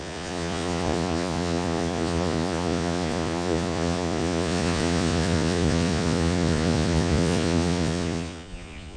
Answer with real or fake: fake